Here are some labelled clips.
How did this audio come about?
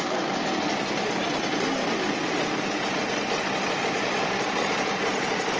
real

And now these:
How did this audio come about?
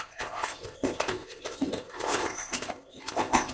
fake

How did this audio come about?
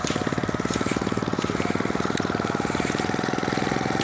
real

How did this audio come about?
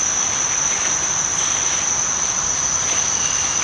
real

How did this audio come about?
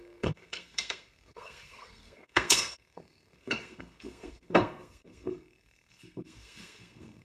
fake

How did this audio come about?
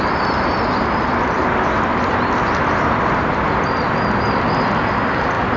real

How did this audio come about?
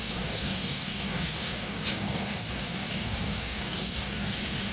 fake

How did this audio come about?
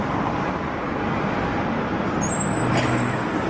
real